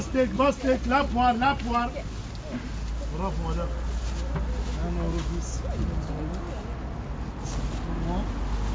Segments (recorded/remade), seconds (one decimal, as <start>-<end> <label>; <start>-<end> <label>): 0.0-8.7 recorded